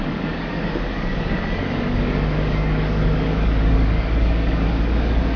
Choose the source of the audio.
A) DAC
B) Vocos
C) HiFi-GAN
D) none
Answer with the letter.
A